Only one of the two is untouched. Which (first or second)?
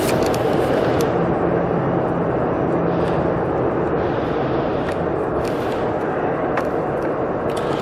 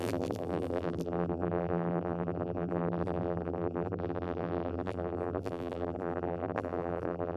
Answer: first